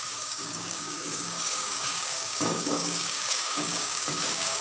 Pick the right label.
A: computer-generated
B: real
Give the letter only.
A